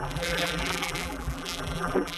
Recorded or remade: remade